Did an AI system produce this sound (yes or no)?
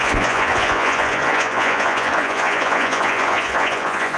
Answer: yes